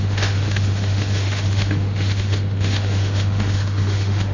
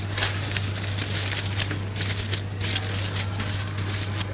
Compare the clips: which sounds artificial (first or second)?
first